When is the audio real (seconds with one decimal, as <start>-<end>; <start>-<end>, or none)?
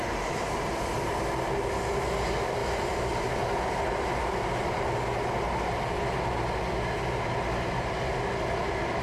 0.0-2.6; 3.3-9.0